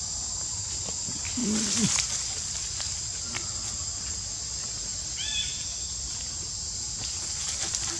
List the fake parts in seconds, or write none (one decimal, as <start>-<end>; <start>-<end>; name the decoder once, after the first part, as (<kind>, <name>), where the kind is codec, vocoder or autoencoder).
none